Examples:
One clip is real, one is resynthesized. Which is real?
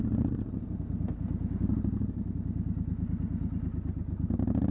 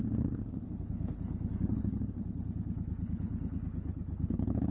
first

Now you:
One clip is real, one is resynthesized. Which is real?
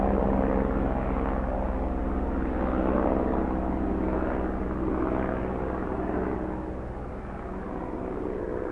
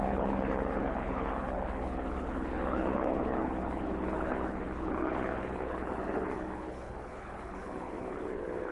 first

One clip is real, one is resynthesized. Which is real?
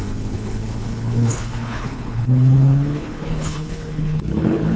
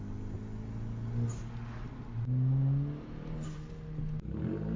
second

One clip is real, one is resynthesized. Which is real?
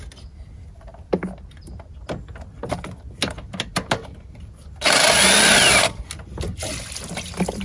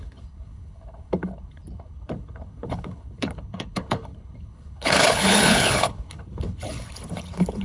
first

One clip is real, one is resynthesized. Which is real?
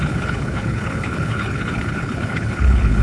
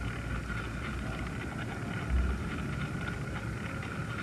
second